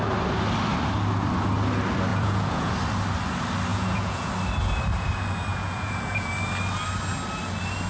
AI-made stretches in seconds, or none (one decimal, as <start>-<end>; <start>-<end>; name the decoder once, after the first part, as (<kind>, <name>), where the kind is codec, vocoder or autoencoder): 2.1-2.7 (vocoder, Vocos); 3.7-4.3; 5.5-6.3